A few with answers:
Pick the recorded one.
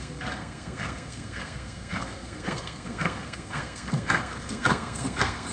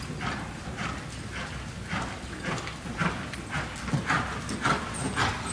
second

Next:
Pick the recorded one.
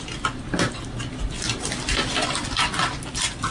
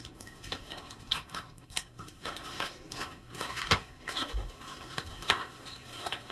first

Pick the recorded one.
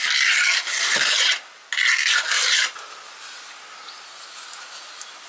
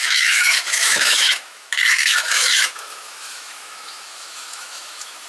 first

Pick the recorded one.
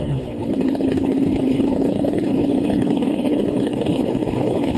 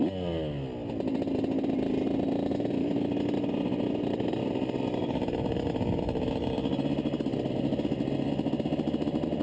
second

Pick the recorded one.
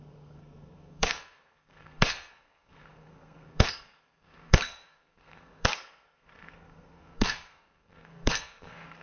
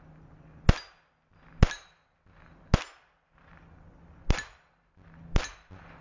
second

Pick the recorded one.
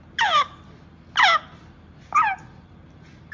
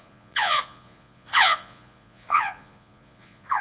first